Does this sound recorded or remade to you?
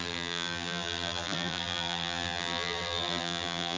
remade